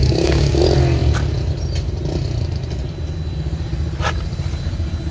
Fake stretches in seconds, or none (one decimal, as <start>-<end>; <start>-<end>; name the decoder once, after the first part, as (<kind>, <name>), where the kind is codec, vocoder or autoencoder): 0.0-0.6 (codec, DAC)